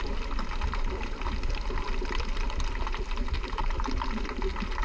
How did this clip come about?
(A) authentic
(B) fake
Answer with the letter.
A